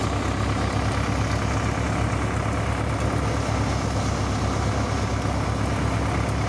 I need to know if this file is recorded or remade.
recorded